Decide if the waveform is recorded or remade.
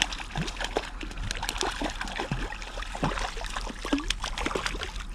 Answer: recorded